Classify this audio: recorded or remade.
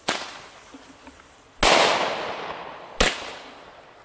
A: recorded